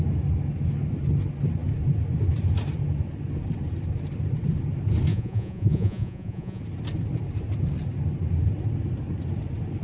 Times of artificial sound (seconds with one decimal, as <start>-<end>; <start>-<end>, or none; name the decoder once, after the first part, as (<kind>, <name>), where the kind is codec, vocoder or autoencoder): 5.1-6.6 (vocoder, Vocos)